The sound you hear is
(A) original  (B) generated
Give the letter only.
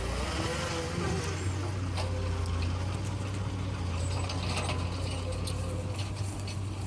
A